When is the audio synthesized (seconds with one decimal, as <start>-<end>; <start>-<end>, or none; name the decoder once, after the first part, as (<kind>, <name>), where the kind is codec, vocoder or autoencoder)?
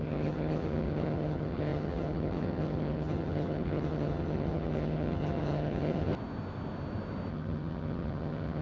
0.0-6.1 (vocoder, HiFi-GAN); 7.3-8.6